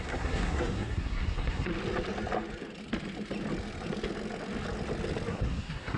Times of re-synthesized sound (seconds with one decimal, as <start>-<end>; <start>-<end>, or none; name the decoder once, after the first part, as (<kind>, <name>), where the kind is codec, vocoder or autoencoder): 0.0-1.7 (codec, SNAC); 5.3-6.0